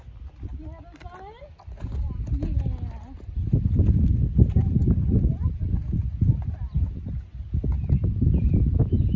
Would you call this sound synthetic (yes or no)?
no